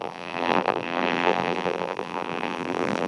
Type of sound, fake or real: fake